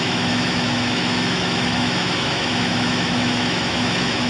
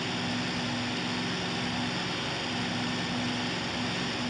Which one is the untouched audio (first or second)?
second